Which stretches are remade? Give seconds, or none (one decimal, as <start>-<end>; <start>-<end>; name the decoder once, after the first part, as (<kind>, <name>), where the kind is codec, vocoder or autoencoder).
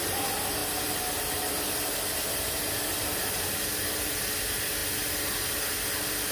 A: none